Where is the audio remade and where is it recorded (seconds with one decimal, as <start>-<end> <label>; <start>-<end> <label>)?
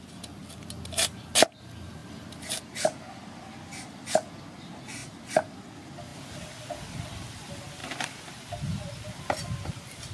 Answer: 0.0-10.1 recorded